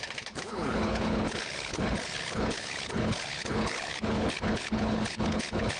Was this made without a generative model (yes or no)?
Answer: no